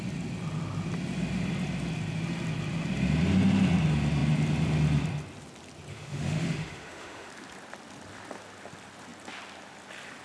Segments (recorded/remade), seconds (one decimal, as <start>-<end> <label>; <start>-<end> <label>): 0.0-5.9 recorded; 5.9-7.3 remade; 7.3-10.2 recorded